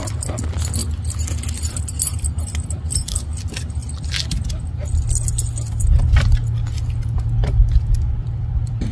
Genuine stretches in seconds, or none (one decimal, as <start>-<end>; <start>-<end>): 0.8-1.6; 3.8-5.7; 6.4-6.9